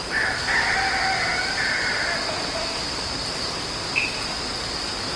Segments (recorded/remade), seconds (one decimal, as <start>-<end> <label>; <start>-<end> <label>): 0.0-5.2 recorded